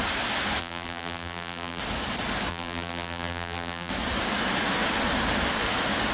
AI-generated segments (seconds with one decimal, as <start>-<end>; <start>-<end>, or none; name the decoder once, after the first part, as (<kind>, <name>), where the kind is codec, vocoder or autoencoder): 0.6-1.8 (vocoder, BigVGAN v2); 2.5-3.9